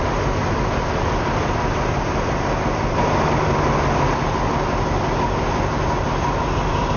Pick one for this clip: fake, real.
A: real